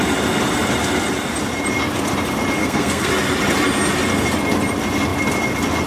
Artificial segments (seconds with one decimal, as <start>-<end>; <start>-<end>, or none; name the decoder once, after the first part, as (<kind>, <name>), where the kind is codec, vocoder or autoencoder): 2.6-3.1 (codec, SNAC)